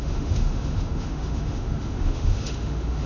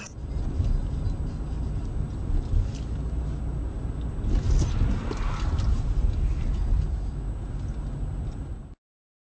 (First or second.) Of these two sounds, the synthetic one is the first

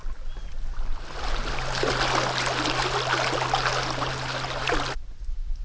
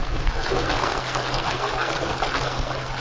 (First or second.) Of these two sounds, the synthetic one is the second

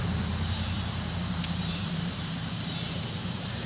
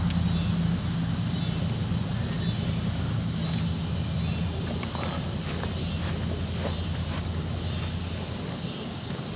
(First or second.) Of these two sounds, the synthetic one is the first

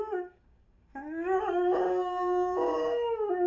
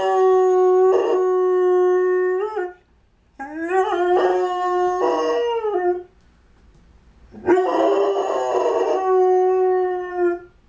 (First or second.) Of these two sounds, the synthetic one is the first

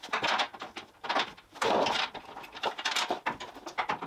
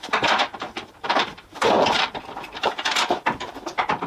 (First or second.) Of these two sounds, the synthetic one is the second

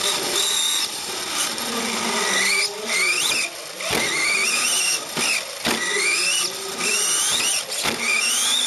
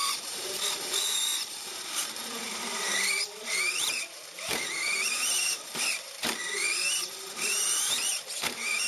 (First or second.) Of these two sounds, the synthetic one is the second